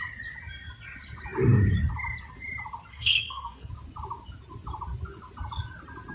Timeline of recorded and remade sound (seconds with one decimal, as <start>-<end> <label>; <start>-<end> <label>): 0.0-2.9 recorded; 2.9-3.7 remade; 3.7-6.1 recorded